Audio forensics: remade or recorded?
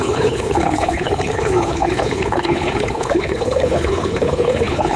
remade